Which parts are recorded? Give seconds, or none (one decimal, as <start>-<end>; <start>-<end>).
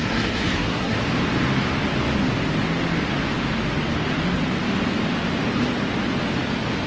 1.0-6.9